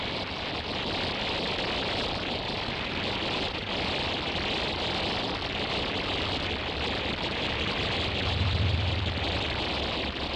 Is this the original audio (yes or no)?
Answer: yes